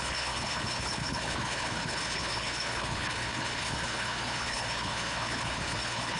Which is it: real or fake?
fake